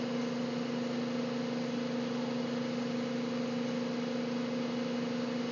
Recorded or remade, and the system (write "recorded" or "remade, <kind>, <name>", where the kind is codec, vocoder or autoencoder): recorded